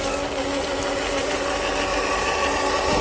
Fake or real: real